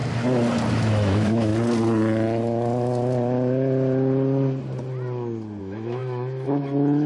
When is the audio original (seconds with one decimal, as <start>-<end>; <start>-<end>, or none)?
0.0-0.7; 1.5-5.6